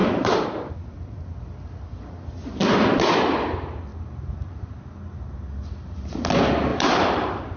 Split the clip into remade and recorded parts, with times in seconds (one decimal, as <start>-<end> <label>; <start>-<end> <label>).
0.0-0.7 remade; 0.7-3.9 recorded; 3.9-4.7 remade; 4.7-6.7 recorded; 6.7-7.6 remade